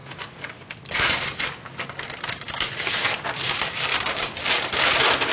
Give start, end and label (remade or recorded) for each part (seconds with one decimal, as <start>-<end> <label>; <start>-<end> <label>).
0.0-3.9 recorded; 3.9-4.4 remade; 4.4-5.3 recorded

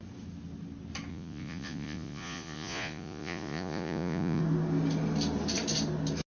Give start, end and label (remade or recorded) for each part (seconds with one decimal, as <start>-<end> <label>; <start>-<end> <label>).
0.0-1.1 recorded; 1.1-4.4 remade; 4.4-6.4 recorded